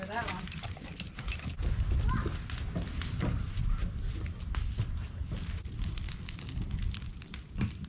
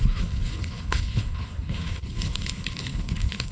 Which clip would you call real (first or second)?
first